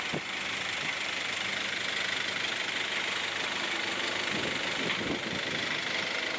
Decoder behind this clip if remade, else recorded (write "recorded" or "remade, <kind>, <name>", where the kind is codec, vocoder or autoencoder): recorded